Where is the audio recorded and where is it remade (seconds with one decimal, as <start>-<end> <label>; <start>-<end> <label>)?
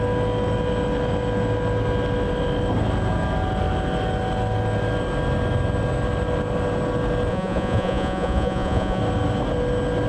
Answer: 0.0-7.3 recorded; 7.3-9.0 remade; 9.0-10.1 recorded